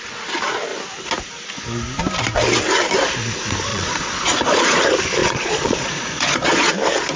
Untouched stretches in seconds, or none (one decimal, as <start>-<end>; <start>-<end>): 0.0-3.7; 4.8-5.2; 6.7-7.2